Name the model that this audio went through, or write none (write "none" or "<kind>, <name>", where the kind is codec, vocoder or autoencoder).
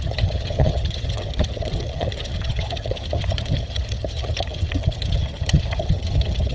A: vocoder, HiFi-GAN